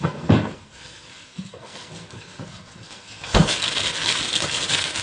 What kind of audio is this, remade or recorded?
remade